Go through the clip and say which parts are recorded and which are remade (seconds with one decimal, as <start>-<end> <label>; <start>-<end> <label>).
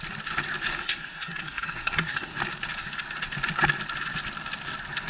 0.0-0.8 recorded; 0.8-2.4 remade; 2.4-5.1 recorded